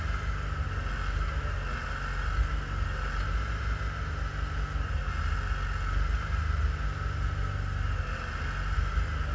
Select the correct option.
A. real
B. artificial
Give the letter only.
A